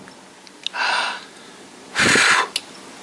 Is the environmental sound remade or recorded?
recorded